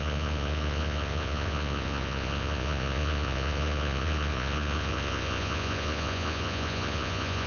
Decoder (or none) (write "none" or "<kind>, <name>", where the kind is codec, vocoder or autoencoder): vocoder, Vocos